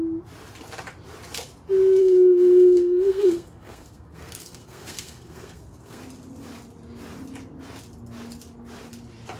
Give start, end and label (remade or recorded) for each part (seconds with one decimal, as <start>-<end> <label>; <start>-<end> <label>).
0.0-2.0 recorded; 2.0-6.0 remade; 6.0-9.4 recorded